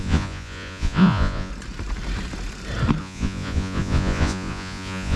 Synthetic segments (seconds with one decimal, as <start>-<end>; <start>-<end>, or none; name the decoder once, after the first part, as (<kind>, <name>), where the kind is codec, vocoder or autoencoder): 0.0-1.5 (vocoder, Vocos); 3.0-5.2

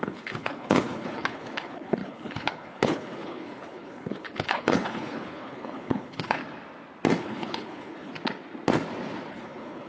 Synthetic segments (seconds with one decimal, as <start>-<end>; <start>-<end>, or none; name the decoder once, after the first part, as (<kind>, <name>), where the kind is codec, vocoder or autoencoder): 0.0-6.4 (codec, HILCodec); 7.2-8.1; 9.3-9.9

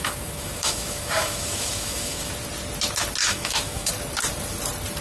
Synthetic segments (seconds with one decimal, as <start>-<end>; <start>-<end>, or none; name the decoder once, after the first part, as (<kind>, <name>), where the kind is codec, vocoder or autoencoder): 0.0-2.3 (autoencoder, DAC-VAE); 3.2-3.9

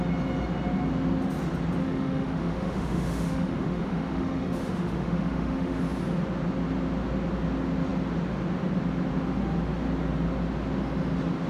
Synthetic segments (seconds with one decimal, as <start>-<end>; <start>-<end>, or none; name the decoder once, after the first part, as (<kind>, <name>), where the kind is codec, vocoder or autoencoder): 1.8-5.8 (autoencoder, DAC-VAE)

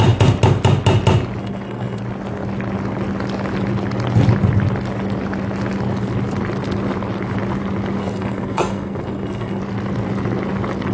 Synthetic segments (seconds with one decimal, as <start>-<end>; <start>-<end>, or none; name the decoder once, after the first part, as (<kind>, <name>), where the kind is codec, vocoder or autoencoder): 1.4-2.0 (codec, SNAC); 8.0-9.6

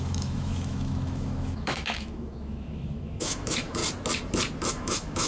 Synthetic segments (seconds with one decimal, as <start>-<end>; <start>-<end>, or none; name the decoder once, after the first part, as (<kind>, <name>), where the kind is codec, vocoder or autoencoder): 0.0-3.8 (autoencoder, DAC-VAE); 4.7-5.3

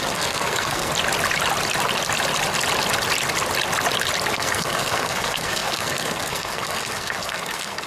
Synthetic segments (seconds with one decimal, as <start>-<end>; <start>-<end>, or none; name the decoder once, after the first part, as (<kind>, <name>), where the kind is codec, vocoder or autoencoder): 0.0-0.9 (codec, SNAC); 4.3-7.9